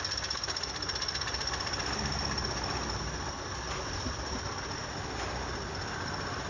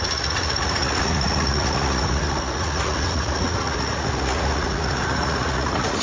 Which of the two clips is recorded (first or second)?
first